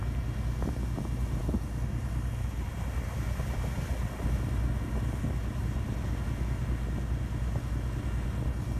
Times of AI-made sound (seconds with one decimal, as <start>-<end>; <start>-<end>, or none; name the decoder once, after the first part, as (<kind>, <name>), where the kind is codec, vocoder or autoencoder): none